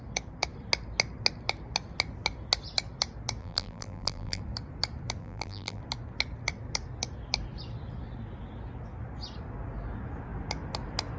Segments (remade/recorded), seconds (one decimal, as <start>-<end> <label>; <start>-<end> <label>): 0.0-3.4 recorded; 3.4-4.4 remade; 4.4-5.2 recorded; 5.2-5.8 remade; 5.8-11.2 recorded